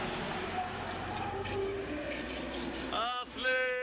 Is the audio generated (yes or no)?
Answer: no